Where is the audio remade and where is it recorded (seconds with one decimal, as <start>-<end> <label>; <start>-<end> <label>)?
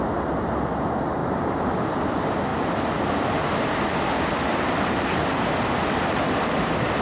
0.0-1.2 recorded; 1.2-2.0 remade; 2.0-7.0 recorded